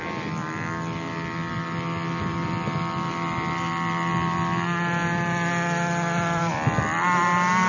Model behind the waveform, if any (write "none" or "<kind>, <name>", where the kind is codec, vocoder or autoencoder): none